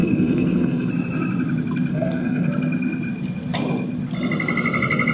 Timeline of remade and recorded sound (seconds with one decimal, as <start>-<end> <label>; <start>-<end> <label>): 0.0-0.9 remade; 0.9-1.9 recorded; 1.9-2.5 remade; 2.5-5.1 recorded

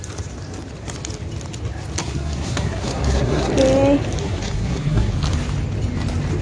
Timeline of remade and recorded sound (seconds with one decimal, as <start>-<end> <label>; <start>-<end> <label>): 0.0-2.0 recorded; 2.0-3.5 remade; 3.5-4.2 recorded; 4.2-5.1 remade; 5.1-6.4 recorded

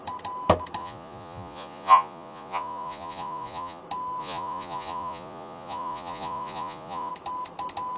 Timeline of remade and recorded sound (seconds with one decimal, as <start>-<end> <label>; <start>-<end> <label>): 0.0-0.8 recorded; 0.8-3.8 remade; 3.8-4.2 recorded; 4.2-7.1 remade; 7.1-8.0 recorded